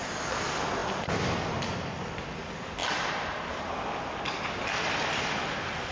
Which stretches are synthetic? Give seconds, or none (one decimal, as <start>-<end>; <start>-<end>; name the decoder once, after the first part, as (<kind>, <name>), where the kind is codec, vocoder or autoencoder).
none